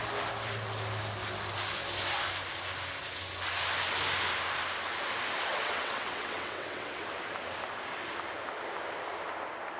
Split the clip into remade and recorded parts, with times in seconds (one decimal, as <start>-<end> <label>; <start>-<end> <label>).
0.0-5.5 recorded; 5.5-7.0 remade; 7.0-9.8 recorded